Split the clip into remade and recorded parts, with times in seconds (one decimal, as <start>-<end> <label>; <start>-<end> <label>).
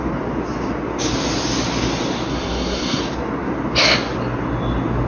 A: 0.0-2.3 recorded; 2.3-3.0 remade; 3.0-5.1 recorded